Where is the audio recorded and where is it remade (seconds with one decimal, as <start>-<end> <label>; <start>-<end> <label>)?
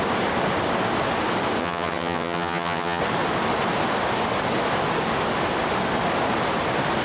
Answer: 0.0-1.6 recorded; 1.6-3.0 remade; 3.0-7.0 recorded